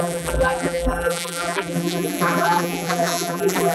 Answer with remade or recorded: remade